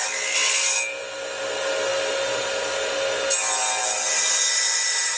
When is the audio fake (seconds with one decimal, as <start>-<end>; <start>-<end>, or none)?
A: none